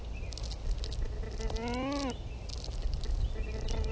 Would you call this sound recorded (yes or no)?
yes